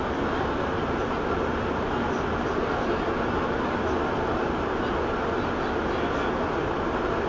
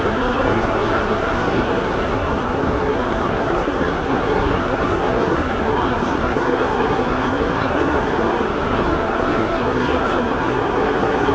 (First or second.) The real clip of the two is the first